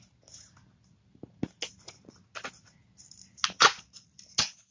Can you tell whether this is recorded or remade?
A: recorded